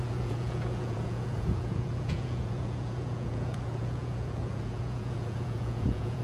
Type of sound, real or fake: fake